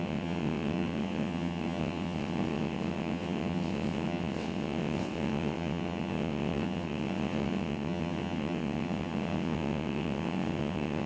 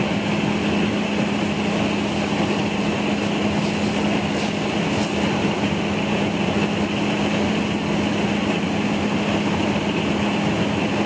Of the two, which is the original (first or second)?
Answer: second